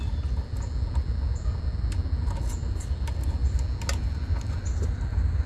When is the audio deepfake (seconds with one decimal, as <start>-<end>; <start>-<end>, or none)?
none